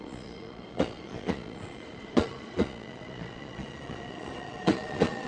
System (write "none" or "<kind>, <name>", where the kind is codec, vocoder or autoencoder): vocoder, Vocos